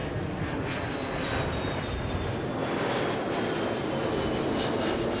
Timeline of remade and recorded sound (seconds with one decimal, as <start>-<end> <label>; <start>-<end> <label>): 0.0-5.2 recorded